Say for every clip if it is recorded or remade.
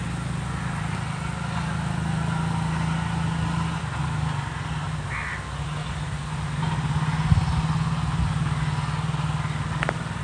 recorded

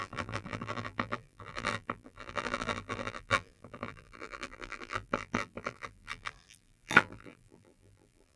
remade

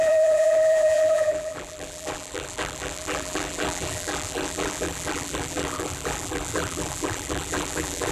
remade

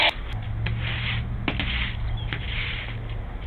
recorded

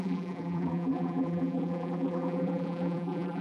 remade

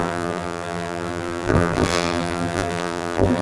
remade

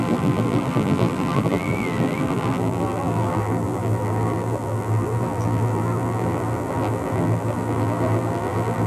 remade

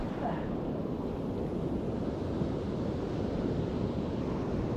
recorded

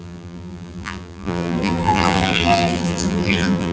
remade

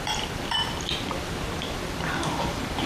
remade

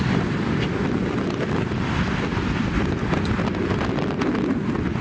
recorded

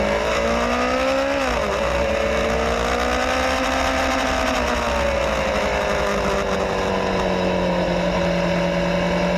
recorded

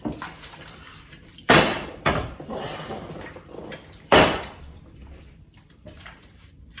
remade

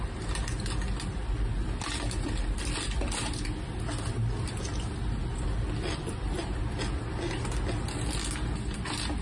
recorded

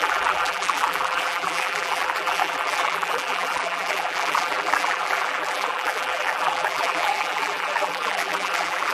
remade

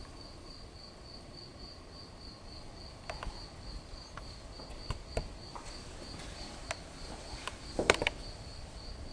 recorded